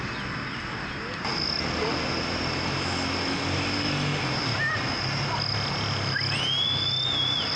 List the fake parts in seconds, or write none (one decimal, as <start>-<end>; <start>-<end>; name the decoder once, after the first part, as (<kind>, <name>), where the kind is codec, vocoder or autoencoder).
none